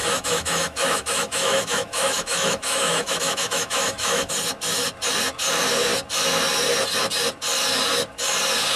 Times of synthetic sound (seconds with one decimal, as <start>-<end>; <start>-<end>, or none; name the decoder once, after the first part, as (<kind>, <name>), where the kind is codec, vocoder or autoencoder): 0.0-4.3 (autoencoder, DAC-VAE)